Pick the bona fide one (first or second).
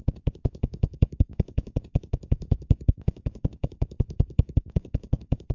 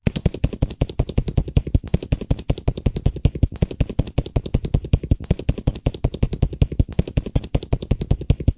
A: second